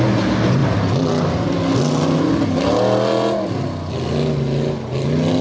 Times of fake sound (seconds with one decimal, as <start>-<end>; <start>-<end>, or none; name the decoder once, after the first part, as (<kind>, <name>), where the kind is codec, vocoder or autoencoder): none